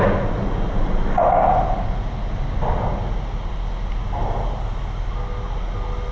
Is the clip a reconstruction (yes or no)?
no